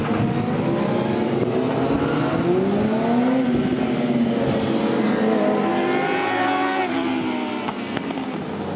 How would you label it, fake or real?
real